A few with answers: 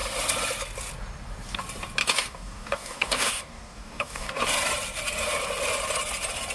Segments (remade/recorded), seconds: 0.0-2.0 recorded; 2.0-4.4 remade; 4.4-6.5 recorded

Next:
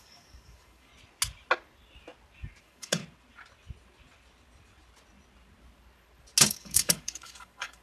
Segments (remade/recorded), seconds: 0.0-0.9 remade; 0.9-2.6 recorded; 2.6-3.0 remade; 3.0-6.5 recorded; 6.5-7.8 remade

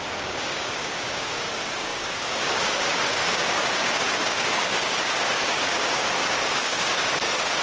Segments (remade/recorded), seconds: 0.0-7.6 remade

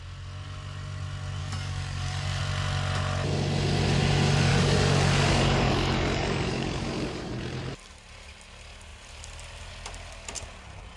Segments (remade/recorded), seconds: 0.0-1.4 recorded; 1.4-2.4 remade; 2.4-4.5 recorded; 4.5-7.3 remade; 7.3-11.0 recorded

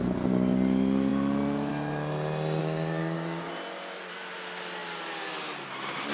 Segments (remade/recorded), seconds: 0.0-2.6 recorded; 2.6-3.5 remade; 3.5-6.1 recorded

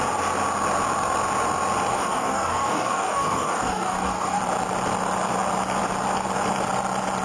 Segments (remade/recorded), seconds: 0.0-1.9 recorded; 1.9-4.4 remade; 4.4-7.2 recorded

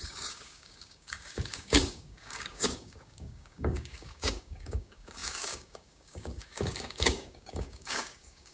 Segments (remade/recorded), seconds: 0.0-8.5 remade